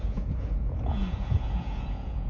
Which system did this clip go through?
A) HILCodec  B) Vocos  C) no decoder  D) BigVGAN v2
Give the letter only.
B